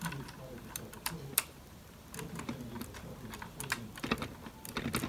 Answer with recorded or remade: recorded